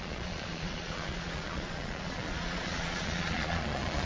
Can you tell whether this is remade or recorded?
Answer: remade